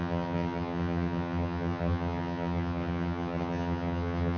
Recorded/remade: remade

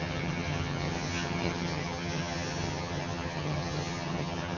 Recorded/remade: remade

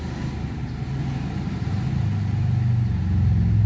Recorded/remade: recorded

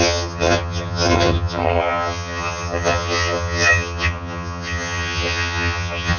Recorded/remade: remade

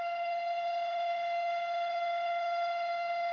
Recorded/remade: remade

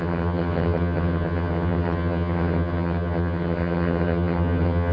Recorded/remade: remade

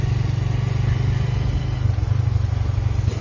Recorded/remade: recorded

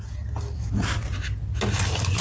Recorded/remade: recorded